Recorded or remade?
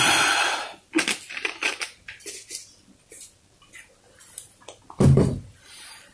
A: recorded